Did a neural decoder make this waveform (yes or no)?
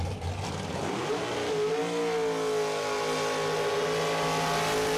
no